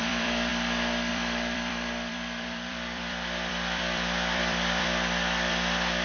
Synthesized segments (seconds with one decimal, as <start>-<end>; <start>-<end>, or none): 0.0-0.5; 1.1-6.0